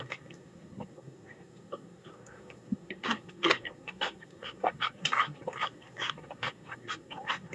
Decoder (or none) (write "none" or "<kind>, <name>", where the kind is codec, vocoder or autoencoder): codec, SNAC